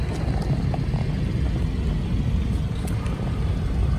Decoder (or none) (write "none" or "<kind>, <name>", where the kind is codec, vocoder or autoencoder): none